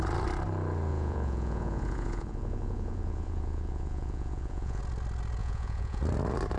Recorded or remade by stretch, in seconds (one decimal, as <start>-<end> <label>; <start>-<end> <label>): 0.0-0.9 recorded; 0.9-4.8 remade; 4.8-5.4 recorded; 5.4-6.0 remade; 6.0-6.6 recorded